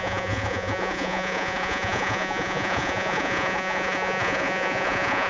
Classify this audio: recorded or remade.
remade